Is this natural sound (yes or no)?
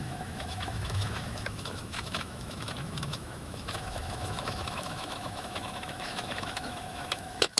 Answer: no